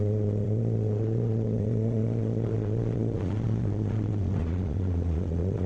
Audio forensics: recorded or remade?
remade